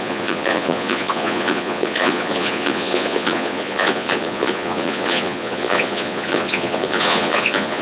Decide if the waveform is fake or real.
fake